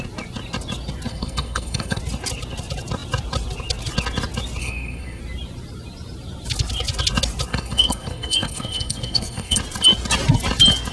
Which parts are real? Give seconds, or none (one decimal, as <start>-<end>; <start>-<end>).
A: 0.0-1.1; 2.0-4.6; 5.2-7.5; 9.6-10.9